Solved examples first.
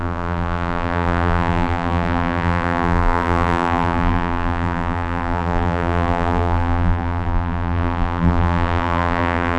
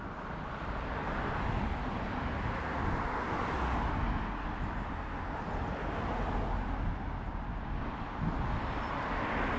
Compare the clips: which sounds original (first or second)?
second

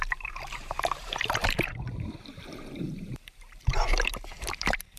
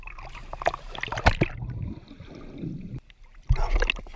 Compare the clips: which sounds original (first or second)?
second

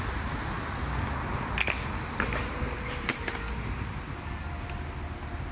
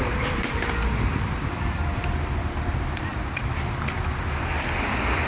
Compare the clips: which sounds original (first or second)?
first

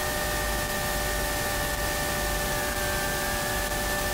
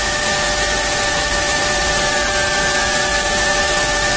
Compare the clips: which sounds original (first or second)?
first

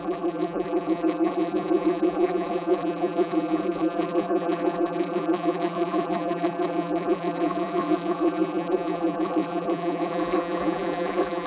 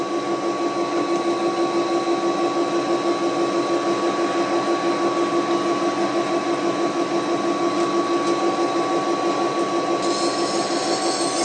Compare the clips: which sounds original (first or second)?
second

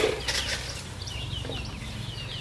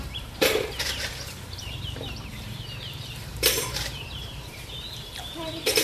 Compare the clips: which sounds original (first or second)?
first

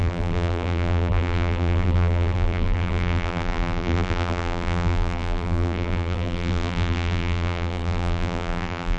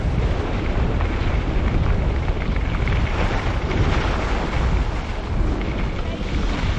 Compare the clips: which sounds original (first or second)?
second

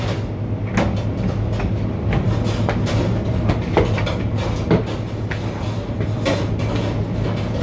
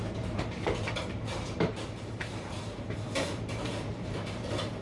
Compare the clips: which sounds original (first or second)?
first